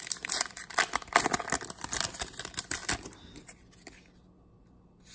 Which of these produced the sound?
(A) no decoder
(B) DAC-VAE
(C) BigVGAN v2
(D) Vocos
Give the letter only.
A